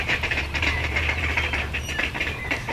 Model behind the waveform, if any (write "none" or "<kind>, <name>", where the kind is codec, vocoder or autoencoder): vocoder, BigVGAN v2